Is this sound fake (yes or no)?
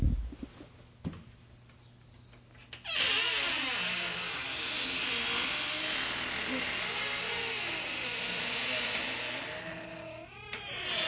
no